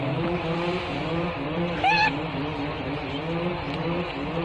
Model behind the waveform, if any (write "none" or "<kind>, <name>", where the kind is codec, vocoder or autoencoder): vocoder, BigVGAN v2